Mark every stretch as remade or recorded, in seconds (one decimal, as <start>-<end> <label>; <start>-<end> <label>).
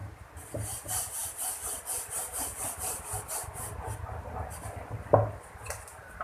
0.0-6.2 recorded